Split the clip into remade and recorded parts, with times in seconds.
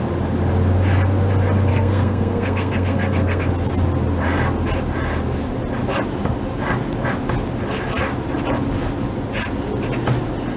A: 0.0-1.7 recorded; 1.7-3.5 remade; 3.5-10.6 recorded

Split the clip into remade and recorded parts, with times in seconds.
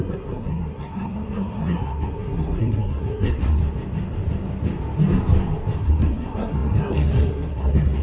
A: 0.0-3.6 remade; 3.6-5.8 recorded; 5.8-8.0 remade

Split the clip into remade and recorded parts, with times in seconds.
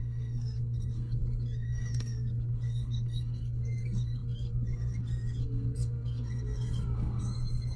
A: 0.0-7.8 remade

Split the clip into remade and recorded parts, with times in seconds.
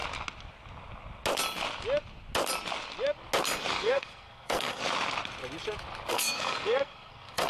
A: 0.0-3.7 recorded; 3.7-4.8 remade; 4.8-6.1 recorded; 6.1-7.5 remade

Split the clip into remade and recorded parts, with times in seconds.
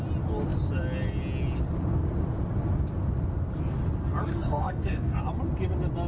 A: 0.0-4.3 recorded; 4.3-5.2 remade; 5.2-6.1 recorded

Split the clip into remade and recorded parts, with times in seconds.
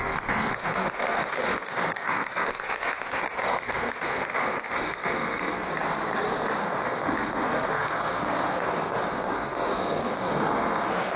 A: 0.0-5.7 remade; 5.7-6.6 recorded; 6.6-11.2 remade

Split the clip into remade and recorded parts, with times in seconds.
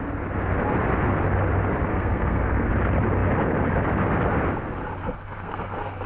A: 0.0-1.9 recorded; 1.9-2.7 remade; 2.7-5.0 recorded; 5.0-6.1 remade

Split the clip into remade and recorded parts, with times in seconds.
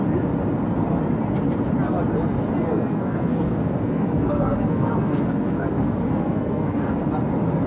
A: 0.0-2.7 recorded; 2.7-7.1 remade; 7.1-7.7 recorded